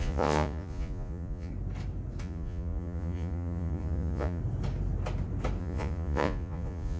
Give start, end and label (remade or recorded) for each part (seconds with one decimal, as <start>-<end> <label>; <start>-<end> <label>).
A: 0.0-1.5 remade; 1.5-2.2 recorded; 2.2-4.4 remade; 4.4-5.6 recorded; 5.6-7.0 remade